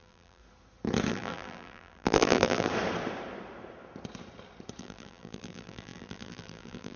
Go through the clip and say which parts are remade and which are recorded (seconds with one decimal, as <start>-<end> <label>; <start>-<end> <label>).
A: 0.0-0.4 remade; 0.4-1.1 recorded; 1.1-2.7 remade; 2.7-4.8 recorded; 4.8-7.0 remade